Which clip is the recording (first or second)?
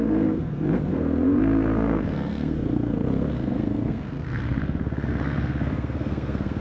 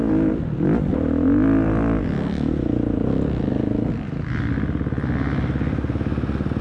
second